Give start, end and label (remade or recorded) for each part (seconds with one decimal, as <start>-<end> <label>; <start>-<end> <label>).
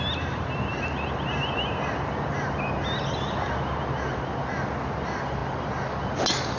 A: 0.0-6.6 recorded